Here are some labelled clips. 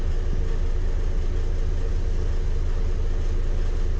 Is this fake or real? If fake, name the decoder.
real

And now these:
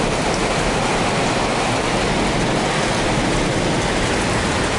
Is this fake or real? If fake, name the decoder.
real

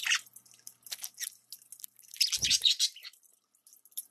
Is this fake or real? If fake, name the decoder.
real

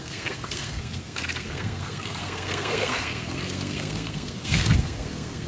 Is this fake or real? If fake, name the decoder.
fake, codec, SNAC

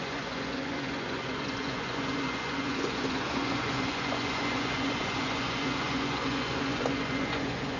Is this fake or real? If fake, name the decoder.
fake, vocoder, Vocos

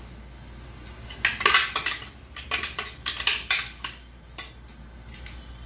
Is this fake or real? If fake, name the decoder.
real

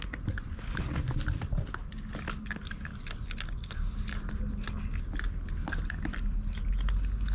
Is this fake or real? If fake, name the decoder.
real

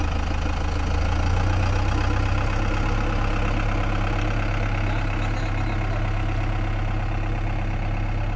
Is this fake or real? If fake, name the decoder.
real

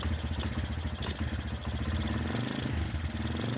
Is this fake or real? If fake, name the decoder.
real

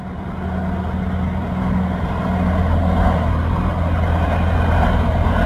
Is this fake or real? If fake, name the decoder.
real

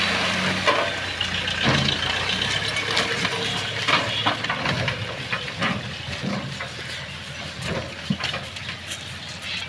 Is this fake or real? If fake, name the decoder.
real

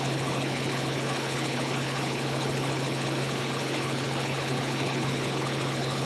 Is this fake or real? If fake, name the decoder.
fake, codec, HILCodec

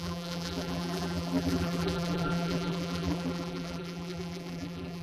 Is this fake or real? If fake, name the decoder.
fake, vocoder, BigVGAN v2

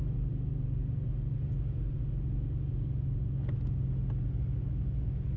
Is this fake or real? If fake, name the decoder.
real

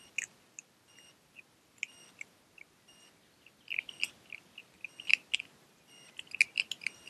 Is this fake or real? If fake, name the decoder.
real